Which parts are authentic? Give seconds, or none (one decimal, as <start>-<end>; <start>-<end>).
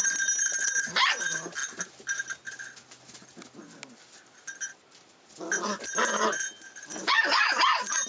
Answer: 0.0-8.1